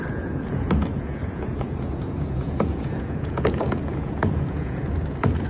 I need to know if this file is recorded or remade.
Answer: remade